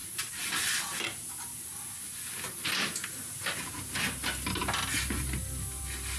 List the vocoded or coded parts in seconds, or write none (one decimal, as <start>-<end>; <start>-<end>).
none

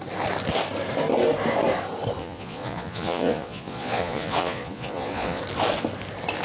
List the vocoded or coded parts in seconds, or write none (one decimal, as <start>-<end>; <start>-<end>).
2.2-5.4

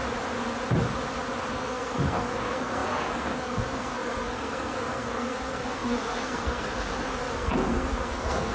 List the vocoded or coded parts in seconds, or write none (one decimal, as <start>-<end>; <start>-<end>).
1.5-8.5

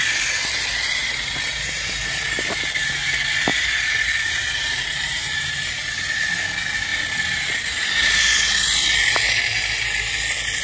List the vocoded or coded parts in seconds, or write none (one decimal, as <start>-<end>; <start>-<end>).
1.0-1.9; 3.5-5.8

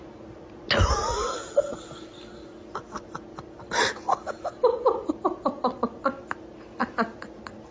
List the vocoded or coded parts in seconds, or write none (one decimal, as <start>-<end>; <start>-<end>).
none